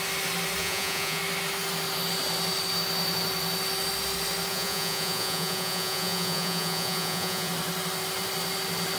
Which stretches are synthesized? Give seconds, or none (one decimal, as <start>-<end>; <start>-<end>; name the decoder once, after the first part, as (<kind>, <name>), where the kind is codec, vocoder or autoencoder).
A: 0.6-1.2 (vocoder, Vocos); 4.5-7.5